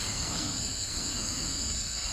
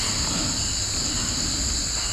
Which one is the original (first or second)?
second